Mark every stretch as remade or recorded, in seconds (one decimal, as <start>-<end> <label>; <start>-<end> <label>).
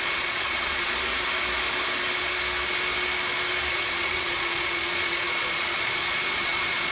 0.0-1.1 remade; 1.1-3.7 recorded; 3.7-6.9 remade